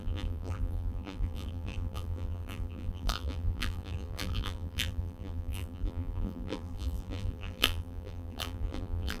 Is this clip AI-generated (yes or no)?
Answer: yes